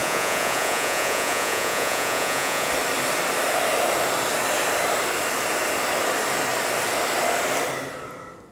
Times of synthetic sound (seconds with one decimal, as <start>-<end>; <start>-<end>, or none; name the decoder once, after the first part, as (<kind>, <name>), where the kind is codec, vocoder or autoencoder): 0.0-2.7 (vocoder, Vocos)